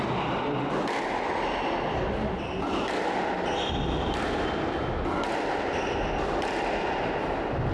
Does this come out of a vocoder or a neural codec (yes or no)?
no